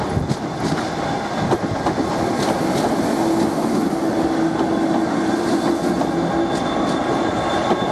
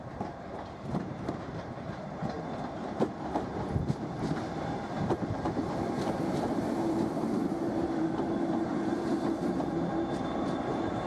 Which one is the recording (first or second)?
first